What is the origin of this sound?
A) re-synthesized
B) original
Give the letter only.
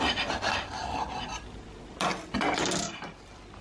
B